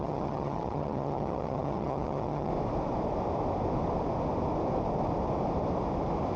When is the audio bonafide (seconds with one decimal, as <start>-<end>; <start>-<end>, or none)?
2.5-6.4